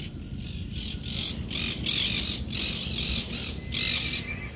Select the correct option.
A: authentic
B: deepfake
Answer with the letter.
A